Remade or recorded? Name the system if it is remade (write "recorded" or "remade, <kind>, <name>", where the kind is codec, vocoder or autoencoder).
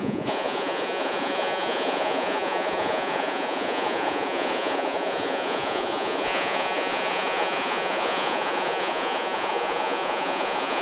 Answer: remade, vocoder, Vocos